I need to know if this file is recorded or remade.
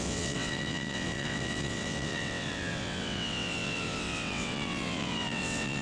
remade